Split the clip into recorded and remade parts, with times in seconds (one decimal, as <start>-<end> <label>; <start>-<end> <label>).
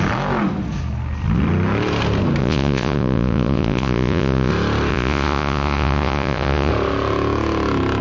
0.0-2.4 recorded; 2.4-4.5 remade; 4.5-4.9 recorded; 4.9-6.7 remade; 6.7-8.0 recorded